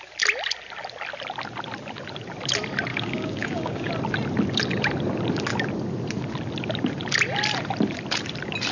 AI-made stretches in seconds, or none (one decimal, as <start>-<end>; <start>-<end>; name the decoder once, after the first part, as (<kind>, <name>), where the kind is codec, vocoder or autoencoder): 2.9-3.9 (codec, DAC)